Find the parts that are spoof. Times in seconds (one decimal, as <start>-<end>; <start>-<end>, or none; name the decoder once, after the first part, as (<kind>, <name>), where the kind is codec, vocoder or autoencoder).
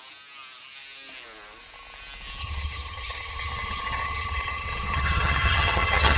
2.4-6.2 (vocoder, HiFi-GAN)